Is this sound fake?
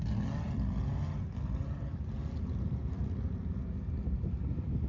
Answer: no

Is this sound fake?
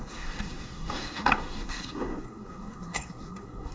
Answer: yes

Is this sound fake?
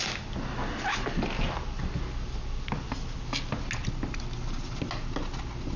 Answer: no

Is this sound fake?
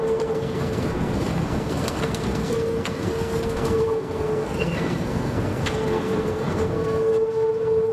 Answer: yes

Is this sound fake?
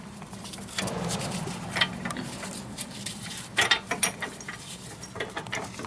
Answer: yes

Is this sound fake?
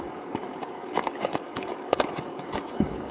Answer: yes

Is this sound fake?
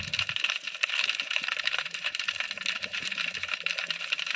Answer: yes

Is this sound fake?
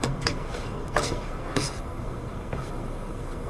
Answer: yes